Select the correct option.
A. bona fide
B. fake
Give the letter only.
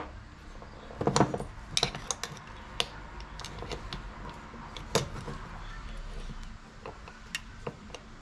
A